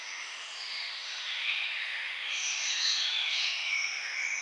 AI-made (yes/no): yes